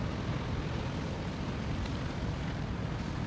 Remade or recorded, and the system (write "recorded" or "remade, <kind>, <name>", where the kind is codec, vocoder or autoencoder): recorded